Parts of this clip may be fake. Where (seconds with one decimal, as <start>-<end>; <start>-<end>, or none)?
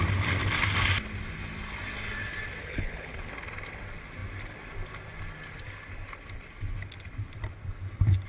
2.6-3.3